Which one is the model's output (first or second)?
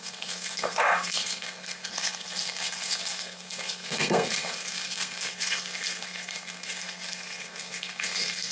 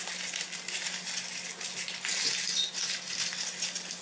first